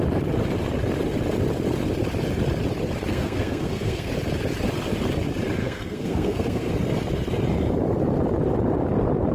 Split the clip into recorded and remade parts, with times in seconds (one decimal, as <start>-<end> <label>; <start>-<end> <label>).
0.0-3.1 recorded; 3.1-4.1 remade; 4.1-5.6 recorded; 5.6-6.7 remade; 6.7-9.3 recorded